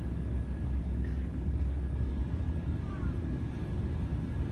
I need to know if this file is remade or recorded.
remade